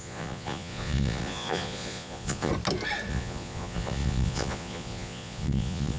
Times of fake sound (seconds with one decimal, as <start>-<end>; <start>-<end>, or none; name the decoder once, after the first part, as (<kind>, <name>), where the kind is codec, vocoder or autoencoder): 0.0-2.5 (vocoder, Vocos); 3.1-6.0